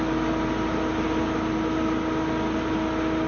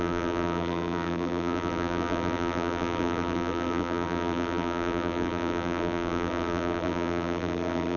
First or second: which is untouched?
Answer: first